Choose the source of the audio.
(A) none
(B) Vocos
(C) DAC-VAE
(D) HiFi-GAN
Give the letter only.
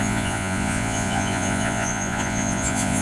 B